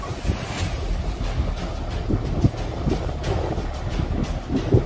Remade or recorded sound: recorded